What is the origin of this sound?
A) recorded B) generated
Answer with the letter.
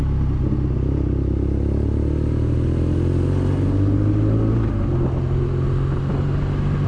A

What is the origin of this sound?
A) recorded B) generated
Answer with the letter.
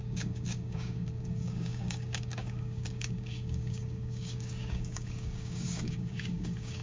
B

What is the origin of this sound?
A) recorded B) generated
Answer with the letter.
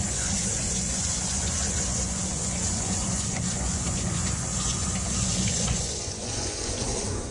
B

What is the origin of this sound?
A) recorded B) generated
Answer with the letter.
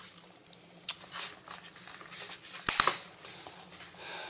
A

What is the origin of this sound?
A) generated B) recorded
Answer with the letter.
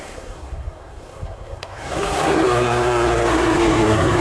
A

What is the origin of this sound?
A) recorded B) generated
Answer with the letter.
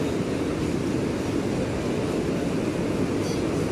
A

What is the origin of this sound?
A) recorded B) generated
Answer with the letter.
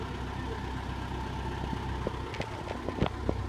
A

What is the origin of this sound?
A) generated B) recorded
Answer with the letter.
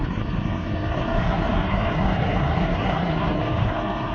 A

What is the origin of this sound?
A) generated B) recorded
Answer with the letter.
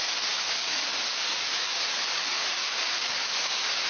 A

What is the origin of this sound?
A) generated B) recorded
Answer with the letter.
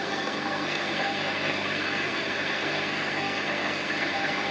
A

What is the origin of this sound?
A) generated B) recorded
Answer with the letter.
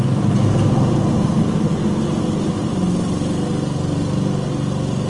B